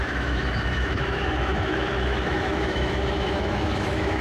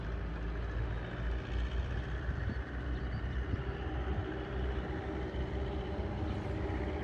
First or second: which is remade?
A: first